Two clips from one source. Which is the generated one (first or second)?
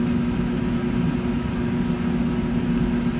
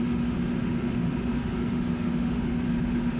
second